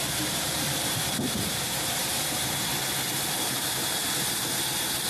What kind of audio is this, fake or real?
fake